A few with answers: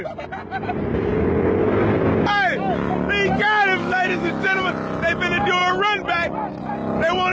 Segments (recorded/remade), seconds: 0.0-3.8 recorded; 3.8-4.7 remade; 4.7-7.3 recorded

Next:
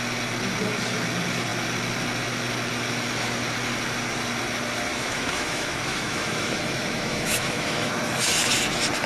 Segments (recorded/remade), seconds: 0.0-4.9 recorded; 4.9-7.9 remade; 7.9-9.1 recorded

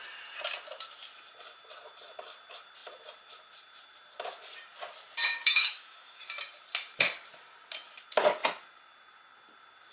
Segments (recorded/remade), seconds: 0.0-5.4 recorded; 5.4-6.2 remade; 6.2-9.9 recorded